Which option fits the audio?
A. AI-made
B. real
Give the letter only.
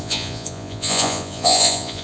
A